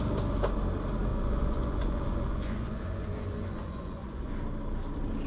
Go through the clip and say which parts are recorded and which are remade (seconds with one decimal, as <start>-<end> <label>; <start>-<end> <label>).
0.0-1.1 recorded; 1.1-4.3 remade; 4.3-5.3 recorded